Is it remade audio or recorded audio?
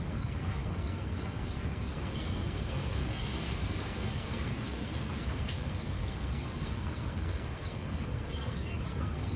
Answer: remade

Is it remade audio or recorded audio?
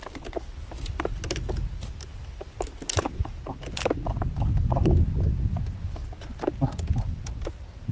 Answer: recorded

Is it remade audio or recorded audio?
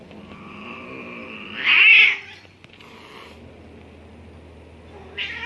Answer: recorded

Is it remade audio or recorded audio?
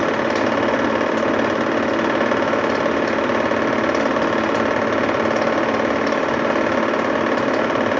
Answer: recorded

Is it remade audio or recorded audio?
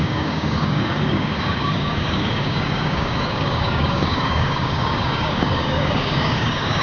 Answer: remade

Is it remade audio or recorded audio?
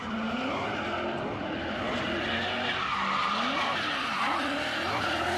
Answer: recorded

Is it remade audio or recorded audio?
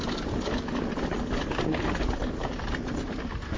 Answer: recorded